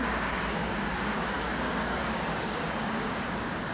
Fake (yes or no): yes